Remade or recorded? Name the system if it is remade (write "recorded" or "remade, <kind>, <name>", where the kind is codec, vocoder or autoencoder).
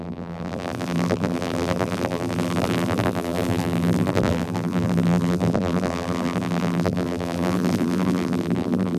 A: remade, vocoder, BigVGAN v2